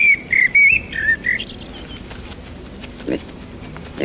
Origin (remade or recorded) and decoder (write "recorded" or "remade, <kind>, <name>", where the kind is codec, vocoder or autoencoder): remade, vocoder, BigVGAN v2